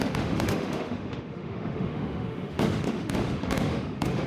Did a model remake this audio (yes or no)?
yes